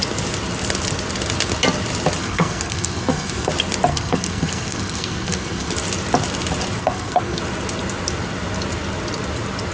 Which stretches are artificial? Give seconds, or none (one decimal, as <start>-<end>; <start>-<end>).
2.2-3.5; 3.9-5.7; 6.8-7.4